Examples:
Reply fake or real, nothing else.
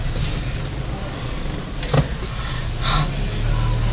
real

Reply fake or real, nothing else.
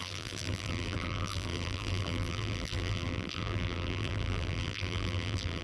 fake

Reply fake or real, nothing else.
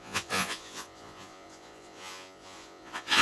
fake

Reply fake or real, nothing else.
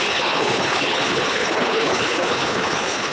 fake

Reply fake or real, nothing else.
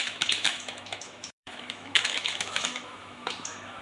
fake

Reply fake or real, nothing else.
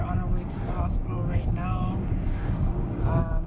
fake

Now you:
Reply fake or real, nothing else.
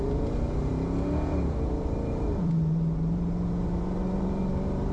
fake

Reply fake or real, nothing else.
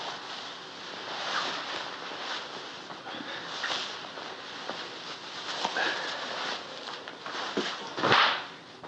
real